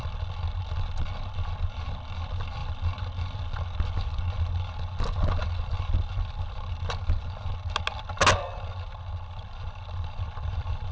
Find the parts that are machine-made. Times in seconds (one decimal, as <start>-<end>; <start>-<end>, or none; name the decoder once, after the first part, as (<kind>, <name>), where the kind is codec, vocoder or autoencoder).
none